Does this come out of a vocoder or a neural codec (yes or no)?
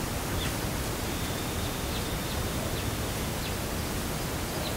no